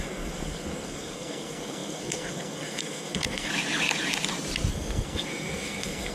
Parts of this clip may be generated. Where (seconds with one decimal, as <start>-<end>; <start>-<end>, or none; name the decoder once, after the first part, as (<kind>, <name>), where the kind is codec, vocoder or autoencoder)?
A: 0.0-3.5 (codec, SNAC); 4.7-6.1